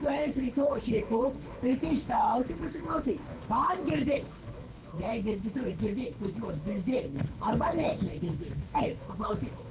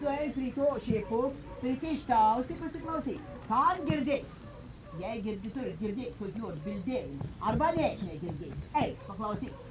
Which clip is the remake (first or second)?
first